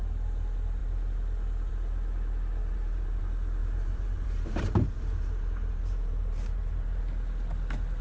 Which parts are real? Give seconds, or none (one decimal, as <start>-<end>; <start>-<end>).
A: 0.0-2.6; 3.2-3.6; 7.0-8.0